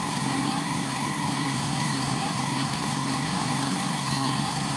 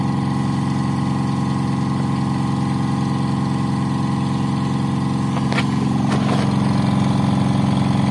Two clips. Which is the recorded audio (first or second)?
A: second